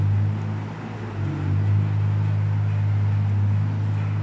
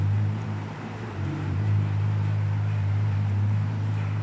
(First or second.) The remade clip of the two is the second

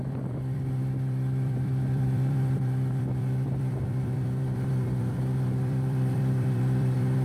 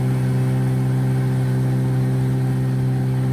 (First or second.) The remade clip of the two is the first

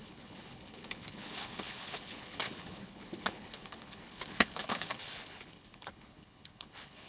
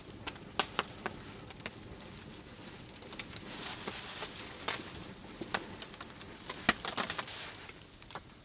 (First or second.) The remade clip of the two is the first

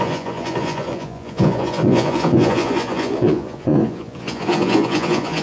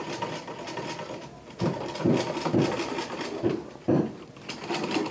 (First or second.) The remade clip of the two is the first